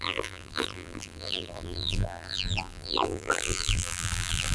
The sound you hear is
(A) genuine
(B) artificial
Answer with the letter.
B